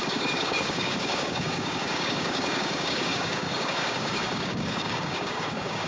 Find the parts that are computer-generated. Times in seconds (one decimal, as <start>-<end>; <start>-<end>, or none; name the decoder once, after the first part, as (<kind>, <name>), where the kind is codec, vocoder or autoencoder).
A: 0.0-5.9 (codec, DAC)